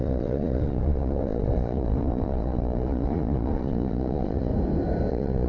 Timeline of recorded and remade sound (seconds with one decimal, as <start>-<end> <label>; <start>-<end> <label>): 0.0-4.5 remade; 4.5-5.1 recorded; 5.1-5.5 remade